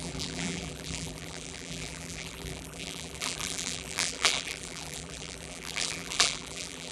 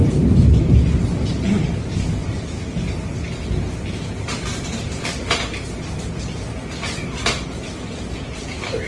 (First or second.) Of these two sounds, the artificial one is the first